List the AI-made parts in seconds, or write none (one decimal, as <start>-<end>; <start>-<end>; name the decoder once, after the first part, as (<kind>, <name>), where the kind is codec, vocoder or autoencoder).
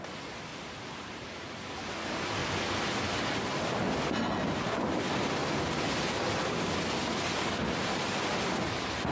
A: 0.5-1.3 (vocoder, BigVGAN v2)